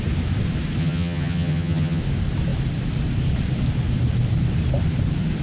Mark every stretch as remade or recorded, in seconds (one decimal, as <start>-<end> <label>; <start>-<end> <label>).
0.0-0.8 recorded; 0.8-2.0 remade; 2.0-5.4 recorded